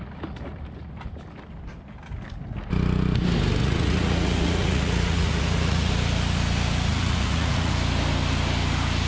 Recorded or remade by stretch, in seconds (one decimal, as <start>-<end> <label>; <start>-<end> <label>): 0.0-3.6 recorded; 3.6-5.9 remade; 5.9-6.9 recorded; 6.9-7.7 remade; 7.7-9.1 recorded